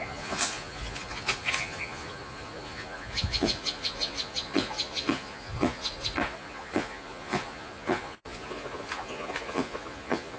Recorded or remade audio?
remade